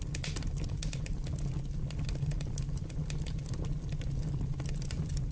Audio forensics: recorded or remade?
recorded